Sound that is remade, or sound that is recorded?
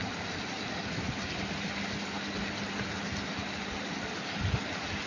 recorded